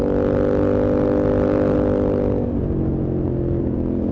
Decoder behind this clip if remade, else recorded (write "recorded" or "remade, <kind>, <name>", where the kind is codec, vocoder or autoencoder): recorded